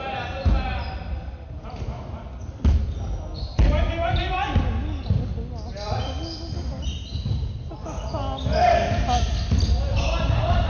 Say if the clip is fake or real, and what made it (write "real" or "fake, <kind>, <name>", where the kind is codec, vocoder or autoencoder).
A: real